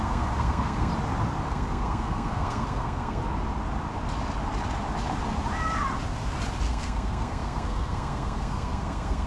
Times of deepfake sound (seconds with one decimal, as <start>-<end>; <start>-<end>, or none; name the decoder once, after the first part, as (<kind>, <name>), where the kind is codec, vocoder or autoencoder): 0.0-0.9 (codec, SNAC); 1.5-3.2; 6.7-9.3